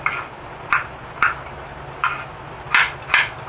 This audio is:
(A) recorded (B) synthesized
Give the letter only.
A